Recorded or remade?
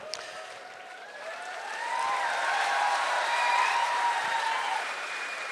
remade